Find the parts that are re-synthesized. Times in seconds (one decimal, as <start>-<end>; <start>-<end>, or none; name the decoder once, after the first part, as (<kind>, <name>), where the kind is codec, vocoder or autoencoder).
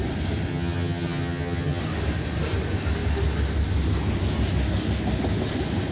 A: 0.5-1.8 (vocoder, HiFi-GAN)